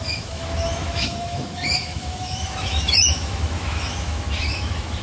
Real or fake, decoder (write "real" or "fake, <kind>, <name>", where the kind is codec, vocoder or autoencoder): fake, autoencoder, DAC-VAE